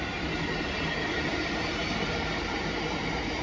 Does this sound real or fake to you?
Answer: fake